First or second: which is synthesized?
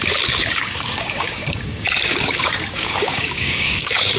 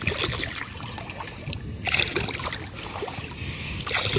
first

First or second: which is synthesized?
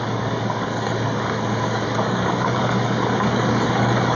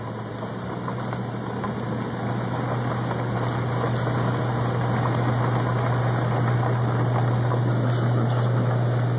first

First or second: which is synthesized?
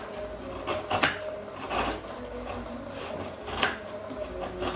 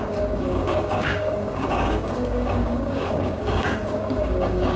second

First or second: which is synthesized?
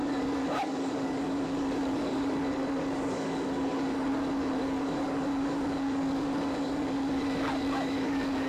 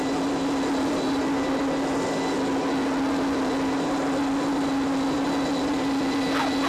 first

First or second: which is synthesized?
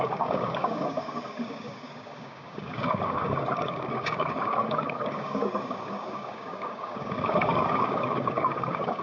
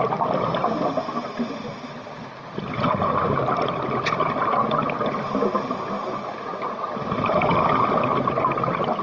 first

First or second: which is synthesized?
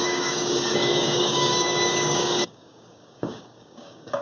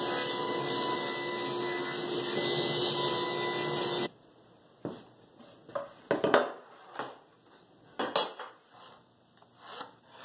first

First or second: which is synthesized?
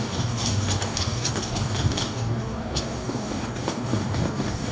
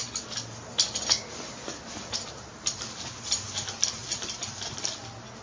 first